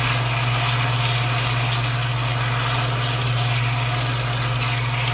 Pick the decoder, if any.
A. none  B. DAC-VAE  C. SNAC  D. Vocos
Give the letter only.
A